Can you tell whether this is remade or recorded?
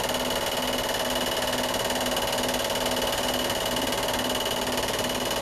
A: recorded